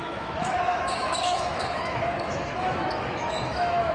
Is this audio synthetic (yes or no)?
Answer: yes